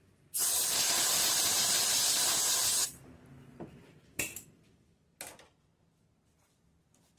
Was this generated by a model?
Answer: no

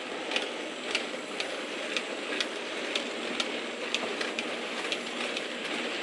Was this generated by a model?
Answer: no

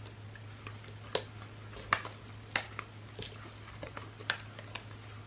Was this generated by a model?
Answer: no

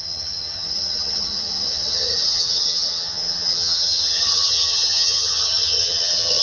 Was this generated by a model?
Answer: yes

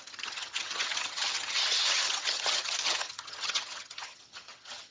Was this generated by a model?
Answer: yes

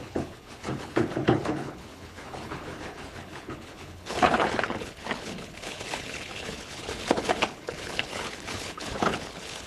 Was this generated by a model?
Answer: yes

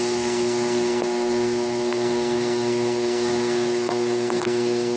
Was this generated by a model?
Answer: yes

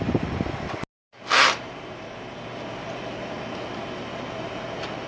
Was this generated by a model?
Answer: no